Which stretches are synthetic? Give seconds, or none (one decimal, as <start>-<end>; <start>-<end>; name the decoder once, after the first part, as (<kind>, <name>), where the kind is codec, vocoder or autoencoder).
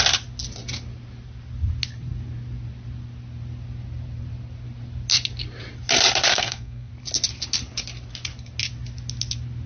6.3-6.9 (codec, SNAC)